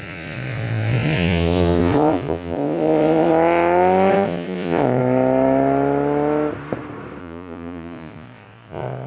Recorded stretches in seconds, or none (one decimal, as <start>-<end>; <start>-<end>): 3.3-4.1; 5.0-7.2